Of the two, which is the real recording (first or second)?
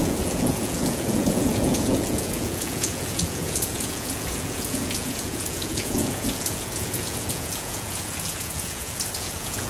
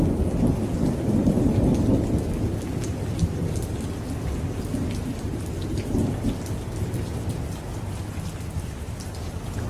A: second